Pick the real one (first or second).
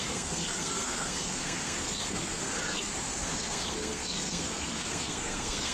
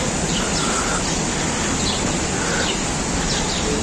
second